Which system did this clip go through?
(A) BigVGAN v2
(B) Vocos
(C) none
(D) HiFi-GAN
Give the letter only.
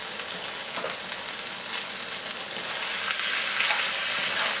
C